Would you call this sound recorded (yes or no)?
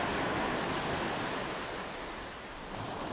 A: yes